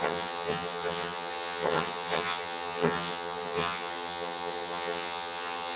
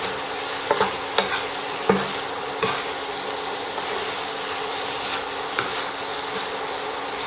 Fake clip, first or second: first